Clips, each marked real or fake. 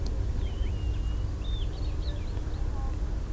real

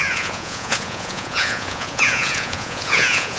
fake